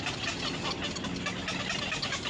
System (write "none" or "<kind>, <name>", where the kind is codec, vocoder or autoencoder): none